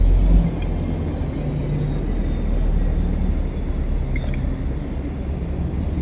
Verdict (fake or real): real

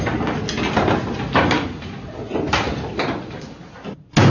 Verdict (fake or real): real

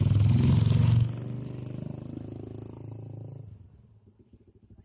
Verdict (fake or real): real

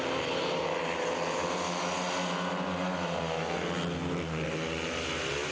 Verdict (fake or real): real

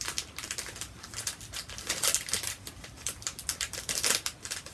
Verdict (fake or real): fake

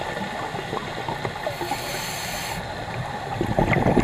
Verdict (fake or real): real